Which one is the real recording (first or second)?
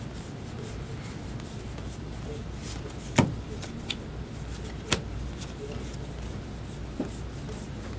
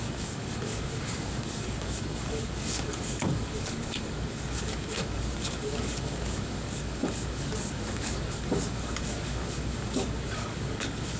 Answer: first